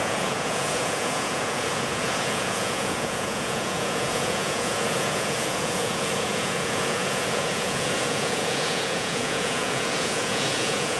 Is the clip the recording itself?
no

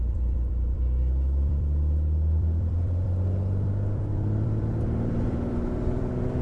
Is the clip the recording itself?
no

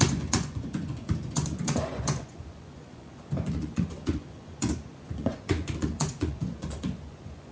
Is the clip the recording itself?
no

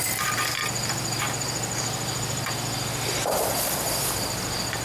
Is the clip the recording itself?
yes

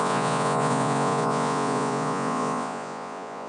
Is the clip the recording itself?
no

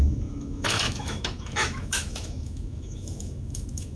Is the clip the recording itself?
no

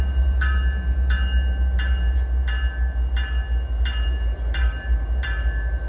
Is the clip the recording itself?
yes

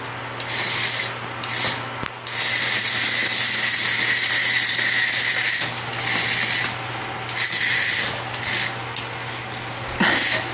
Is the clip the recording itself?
yes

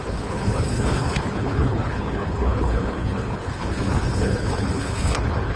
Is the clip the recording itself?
no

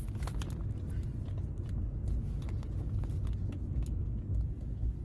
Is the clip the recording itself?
yes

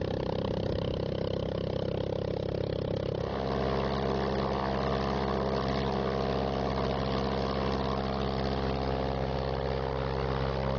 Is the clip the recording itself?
yes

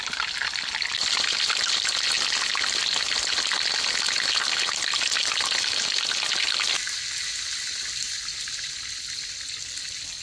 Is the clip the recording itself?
yes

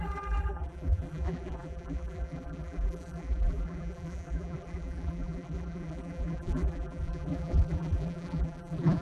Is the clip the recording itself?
no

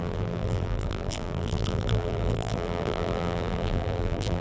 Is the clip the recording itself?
no